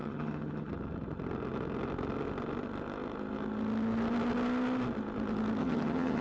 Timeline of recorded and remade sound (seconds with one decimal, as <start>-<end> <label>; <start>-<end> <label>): 0.0-0.7 remade; 0.7-5.6 recorded; 5.6-6.2 remade